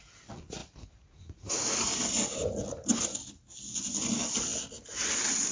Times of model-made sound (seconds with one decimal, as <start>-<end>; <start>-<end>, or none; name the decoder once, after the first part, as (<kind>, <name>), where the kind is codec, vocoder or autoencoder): 0.6-1.8 (vocoder, Vocos)